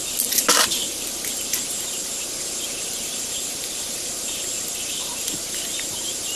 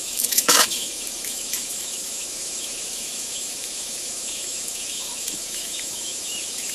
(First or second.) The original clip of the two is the first